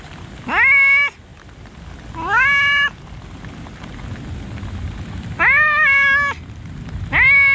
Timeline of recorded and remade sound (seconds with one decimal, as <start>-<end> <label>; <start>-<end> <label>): 0.0-7.5 recorded